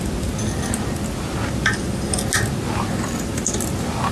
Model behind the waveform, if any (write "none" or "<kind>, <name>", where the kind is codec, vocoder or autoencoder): none